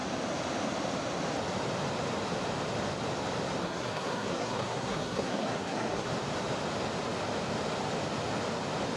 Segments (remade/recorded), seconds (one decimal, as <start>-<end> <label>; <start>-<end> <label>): 0.0-3.6 recorded; 3.6-6.1 remade; 6.1-9.0 recorded